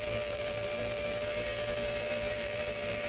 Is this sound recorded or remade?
remade